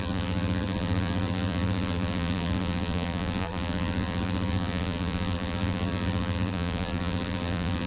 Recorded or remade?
remade